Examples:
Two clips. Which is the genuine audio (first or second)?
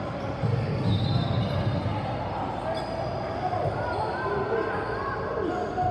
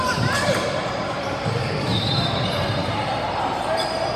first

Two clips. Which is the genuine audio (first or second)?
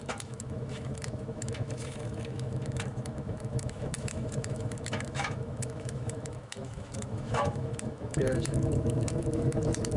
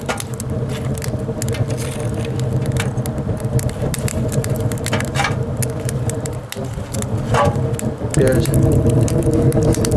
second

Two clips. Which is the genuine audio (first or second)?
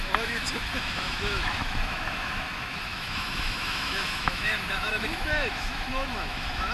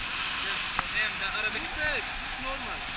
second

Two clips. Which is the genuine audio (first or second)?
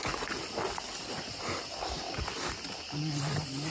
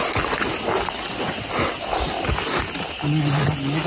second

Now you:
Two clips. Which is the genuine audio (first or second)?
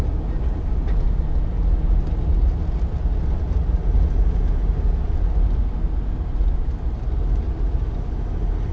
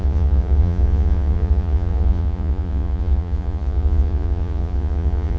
first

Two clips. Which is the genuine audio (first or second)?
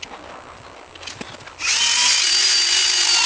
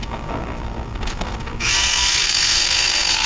first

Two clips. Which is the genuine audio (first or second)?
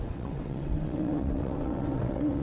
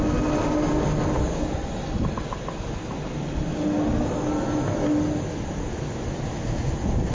second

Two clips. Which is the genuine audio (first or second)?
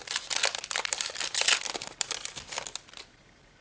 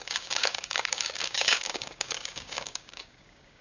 first